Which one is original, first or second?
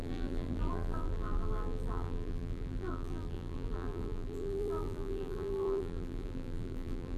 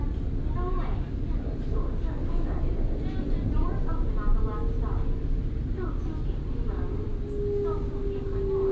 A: second